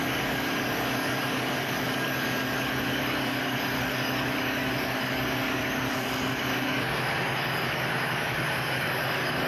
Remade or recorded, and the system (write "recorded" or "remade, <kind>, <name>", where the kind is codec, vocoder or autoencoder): remade, codec, DAC